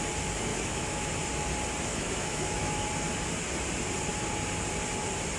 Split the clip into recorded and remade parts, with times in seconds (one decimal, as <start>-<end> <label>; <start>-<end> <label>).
0.0-0.5 recorded; 0.5-1.1 remade; 1.1-1.9 recorded; 1.9-2.9 remade; 2.9-5.4 recorded